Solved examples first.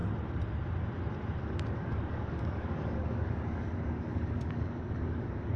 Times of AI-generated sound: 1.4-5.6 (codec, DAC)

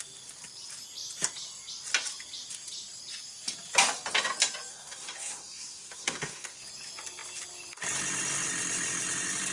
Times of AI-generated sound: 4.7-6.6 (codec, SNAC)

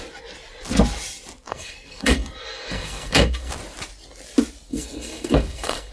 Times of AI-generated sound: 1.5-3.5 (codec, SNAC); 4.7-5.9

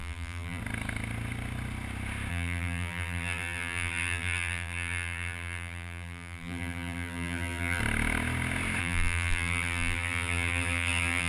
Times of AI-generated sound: 0.0-0.6 (vocoder, BigVGAN v2); 2.3-7.8; 8.8-11.3

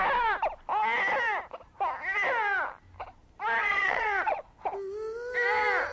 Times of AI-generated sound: 3.6-4.5 (vocoder, Vocos)

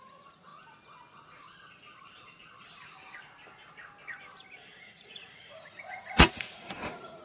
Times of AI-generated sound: 0.0-0.5 (vocoder, Vocos); 4.8-7.2

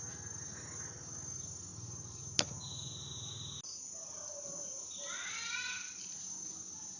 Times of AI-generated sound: 1.7-2.2 (vocoder, BigVGAN v2)